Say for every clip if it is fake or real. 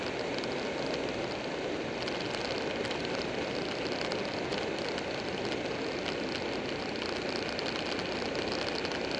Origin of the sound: real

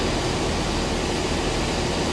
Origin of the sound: real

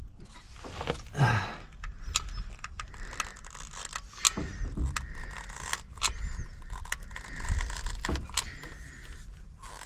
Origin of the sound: real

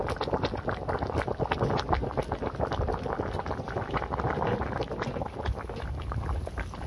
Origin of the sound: real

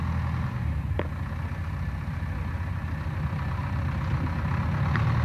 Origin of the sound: real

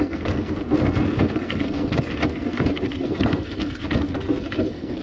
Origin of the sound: fake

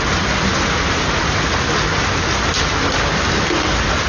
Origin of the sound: real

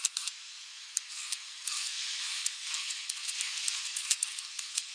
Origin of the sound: fake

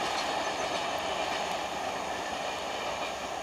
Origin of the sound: real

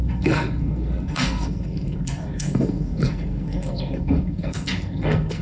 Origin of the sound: fake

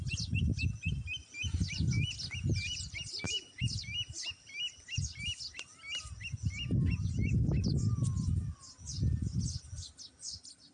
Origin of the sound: real